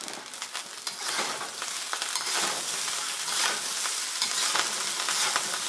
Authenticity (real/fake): real